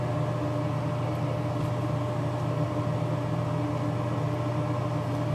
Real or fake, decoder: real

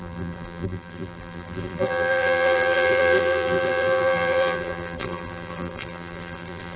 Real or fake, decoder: fake, vocoder, BigVGAN v2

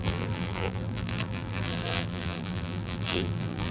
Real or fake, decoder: fake, vocoder, BigVGAN v2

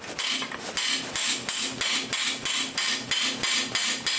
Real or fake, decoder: real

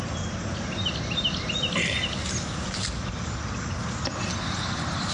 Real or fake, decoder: real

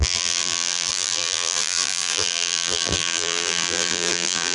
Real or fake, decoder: fake, vocoder, BigVGAN v2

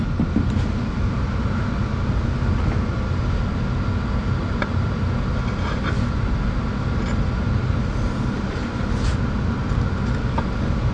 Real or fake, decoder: real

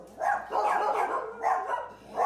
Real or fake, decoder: real